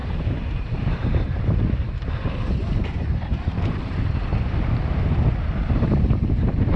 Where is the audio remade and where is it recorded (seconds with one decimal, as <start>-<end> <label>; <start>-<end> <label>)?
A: 0.0-1.4 remade; 1.4-3.3 recorded; 3.3-3.9 remade; 3.9-4.3 recorded; 4.3-5.0 remade; 5.0-6.8 recorded